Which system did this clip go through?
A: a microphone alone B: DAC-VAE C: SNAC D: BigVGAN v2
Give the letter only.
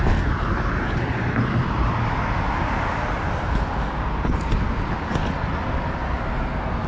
A